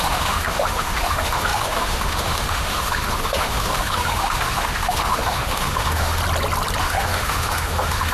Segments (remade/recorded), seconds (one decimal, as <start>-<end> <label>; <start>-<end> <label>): 0.0-6.2 remade; 6.2-6.8 recorded; 6.8-8.1 remade